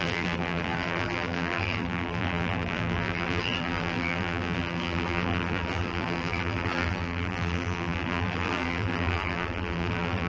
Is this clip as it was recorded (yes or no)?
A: no